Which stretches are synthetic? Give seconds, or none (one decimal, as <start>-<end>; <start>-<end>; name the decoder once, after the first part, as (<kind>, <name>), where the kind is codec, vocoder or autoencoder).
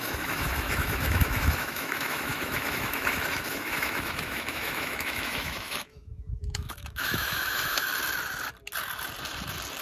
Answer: 0.0-7.9 (autoencoder, DAC-VAE)